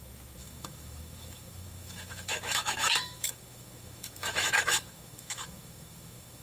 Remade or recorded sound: remade